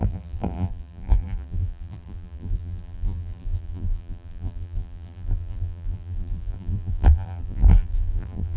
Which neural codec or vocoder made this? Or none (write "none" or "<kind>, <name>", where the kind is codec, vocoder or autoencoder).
vocoder, BigVGAN v2